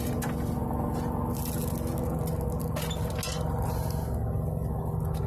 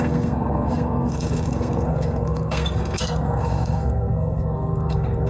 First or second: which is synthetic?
second